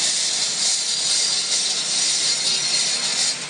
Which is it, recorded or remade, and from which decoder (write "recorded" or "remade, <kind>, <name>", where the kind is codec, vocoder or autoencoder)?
recorded